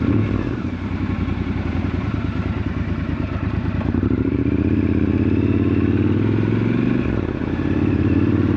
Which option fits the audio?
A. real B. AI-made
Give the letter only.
B